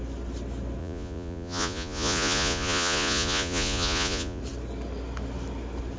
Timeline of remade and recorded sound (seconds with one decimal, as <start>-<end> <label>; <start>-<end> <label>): 0.0-0.8 recorded; 0.8-4.4 remade; 4.4-6.0 recorded